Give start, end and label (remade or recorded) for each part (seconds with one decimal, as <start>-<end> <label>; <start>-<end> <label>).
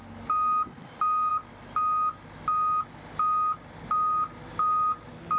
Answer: 0.0-5.4 recorded